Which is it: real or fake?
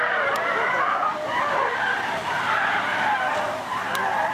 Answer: real